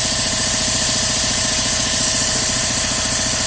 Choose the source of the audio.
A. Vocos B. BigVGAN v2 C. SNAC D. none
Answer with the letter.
B